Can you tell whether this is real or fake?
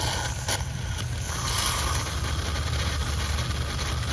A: real